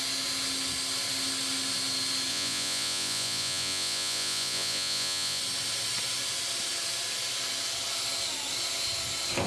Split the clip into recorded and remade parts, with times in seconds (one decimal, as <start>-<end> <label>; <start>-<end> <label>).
0.0-2.3 recorded; 2.3-5.4 remade; 5.4-9.5 recorded

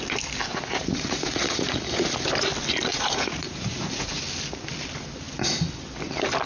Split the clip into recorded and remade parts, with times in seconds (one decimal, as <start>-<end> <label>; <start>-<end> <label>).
0.0-0.5 recorded; 0.5-2.2 remade; 2.2-2.9 recorded; 2.9-4.2 remade; 4.2-6.5 recorded

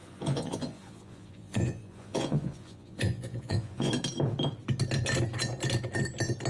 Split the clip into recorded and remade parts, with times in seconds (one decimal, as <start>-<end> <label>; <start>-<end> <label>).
0.0-3.9 remade; 3.9-6.5 recorded

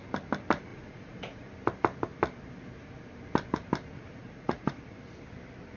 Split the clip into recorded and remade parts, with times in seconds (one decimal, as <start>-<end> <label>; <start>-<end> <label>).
0.0-0.7 recorded; 0.7-1.5 remade; 1.5-4.2 recorded; 4.2-4.7 remade; 4.7-5.8 recorded